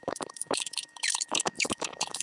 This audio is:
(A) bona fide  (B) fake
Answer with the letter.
B